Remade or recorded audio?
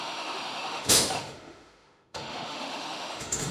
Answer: remade